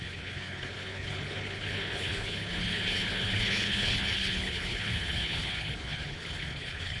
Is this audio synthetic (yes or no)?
yes